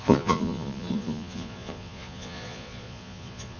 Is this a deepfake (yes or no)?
yes